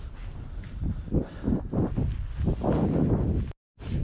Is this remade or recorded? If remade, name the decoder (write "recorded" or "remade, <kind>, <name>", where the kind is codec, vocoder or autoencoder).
recorded